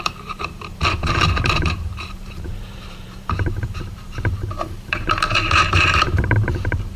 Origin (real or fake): fake